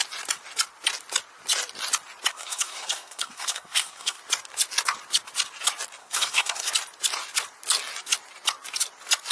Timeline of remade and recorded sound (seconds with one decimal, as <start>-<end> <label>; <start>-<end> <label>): 0.0-2.3 recorded; 2.3-4.2 remade; 4.2-6.0 recorded; 6.0-6.7 remade; 6.7-9.3 recorded